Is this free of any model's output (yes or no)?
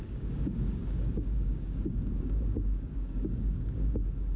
no